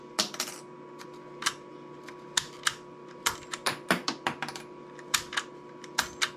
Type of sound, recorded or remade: recorded